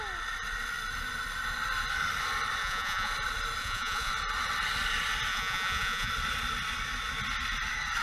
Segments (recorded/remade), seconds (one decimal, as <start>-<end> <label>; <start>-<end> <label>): 0.0-2.6 recorded; 2.6-3.1 remade; 3.1-3.6 recorded; 3.6-4.1 remade; 4.1-5.3 recorded; 5.3-6.1 remade; 6.1-8.0 recorded